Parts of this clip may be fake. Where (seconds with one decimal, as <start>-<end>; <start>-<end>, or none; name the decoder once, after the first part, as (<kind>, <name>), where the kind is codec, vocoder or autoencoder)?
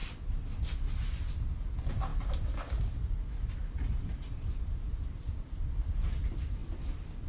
none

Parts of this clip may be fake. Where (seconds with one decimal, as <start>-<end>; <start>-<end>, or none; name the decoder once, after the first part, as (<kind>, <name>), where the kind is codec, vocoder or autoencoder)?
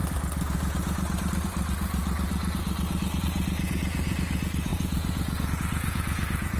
3.2-6.6 (vocoder, Vocos)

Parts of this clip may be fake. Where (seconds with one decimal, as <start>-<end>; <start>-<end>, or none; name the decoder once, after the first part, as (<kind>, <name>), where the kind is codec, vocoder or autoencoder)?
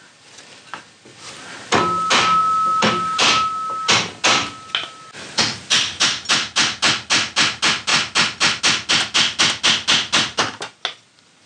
none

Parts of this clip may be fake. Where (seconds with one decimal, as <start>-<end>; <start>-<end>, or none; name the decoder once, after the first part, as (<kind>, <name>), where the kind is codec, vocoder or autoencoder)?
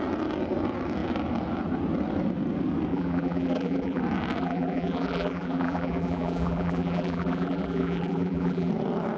2.9-4.0 (vocoder, BigVGAN v2); 4.4-8.7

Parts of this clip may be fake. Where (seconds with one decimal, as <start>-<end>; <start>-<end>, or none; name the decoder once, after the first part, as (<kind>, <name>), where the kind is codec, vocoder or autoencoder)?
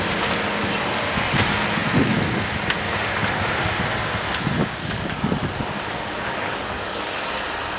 4.6-7.3 (codec, DAC)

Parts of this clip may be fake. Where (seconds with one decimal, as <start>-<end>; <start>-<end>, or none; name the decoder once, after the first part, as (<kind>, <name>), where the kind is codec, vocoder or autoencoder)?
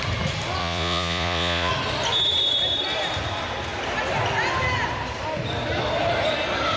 0.6-1.7 (vocoder, Vocos)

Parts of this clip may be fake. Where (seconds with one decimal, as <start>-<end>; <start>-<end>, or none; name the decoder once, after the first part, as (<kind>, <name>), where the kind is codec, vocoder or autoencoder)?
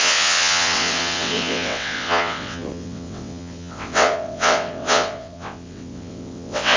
0.0-6.8 (vocoder, WaveNeXt)